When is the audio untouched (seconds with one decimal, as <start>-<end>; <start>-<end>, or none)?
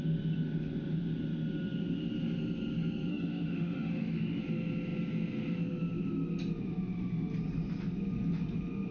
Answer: 0.0-3.1; 4.4-8.9